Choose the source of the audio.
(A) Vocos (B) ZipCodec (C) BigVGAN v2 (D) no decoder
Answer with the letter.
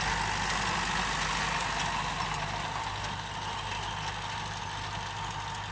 D